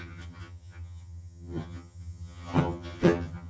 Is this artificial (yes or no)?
yes